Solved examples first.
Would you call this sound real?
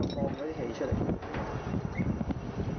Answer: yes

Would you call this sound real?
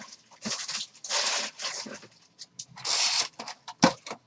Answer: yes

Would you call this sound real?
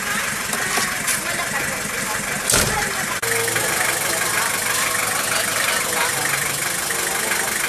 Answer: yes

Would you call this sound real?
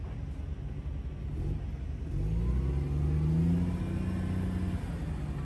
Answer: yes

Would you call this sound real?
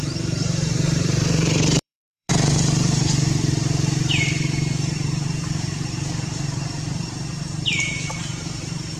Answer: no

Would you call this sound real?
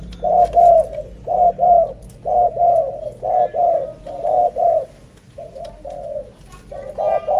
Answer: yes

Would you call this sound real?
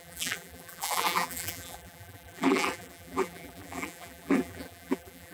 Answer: no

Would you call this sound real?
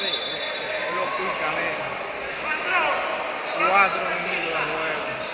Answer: yes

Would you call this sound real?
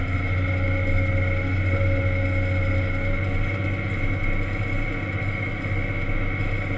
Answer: yes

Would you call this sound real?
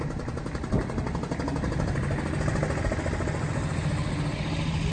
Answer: yes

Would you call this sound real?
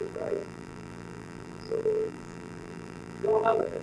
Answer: no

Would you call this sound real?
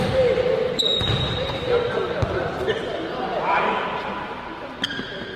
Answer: no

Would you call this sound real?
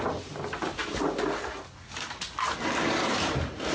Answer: yes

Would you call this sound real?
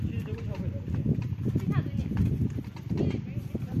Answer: yes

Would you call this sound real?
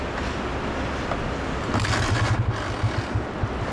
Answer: yes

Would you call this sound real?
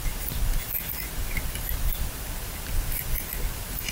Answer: no